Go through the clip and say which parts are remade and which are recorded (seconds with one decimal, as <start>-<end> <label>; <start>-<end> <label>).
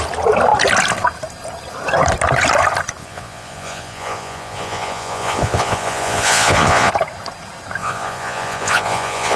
0.0-3.0 recorded; 3.0-6.9 remade; 6.9-7.8 recorded; 7.8-9.4 remade